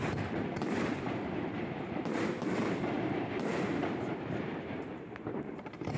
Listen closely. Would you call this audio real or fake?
fake